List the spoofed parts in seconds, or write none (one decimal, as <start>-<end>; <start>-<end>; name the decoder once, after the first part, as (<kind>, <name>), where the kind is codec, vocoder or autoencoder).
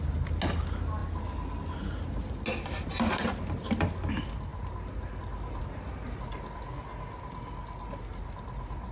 none